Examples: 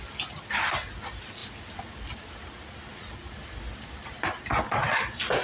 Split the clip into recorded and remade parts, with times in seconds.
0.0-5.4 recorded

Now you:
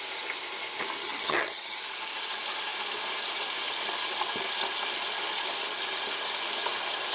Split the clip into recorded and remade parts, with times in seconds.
0.0-1.0 recorded; 1.0-1.8 remade; 1.8-7.1 recorded

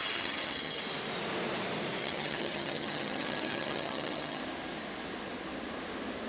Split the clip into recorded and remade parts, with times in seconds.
0.0-0.8 remade; 0.8-2.0 recorded; 2.0-4.4 remade; 4.4-6.3 recorded